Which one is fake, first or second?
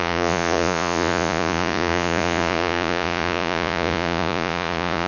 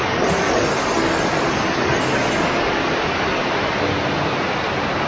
first